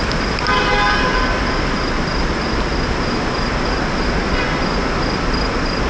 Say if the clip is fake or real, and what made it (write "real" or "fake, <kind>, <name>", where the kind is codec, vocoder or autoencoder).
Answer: real